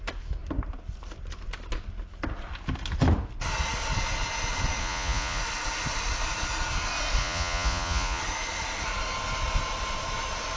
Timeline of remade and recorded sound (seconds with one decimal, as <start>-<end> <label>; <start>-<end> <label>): 0.0-4.8 recorded; 4.8-5.4 remade; 5.4-7.2 recorded; 7.2-8.2 remade; 8.2-10.6 recorded